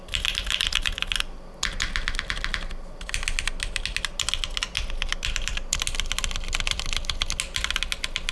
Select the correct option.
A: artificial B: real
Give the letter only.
B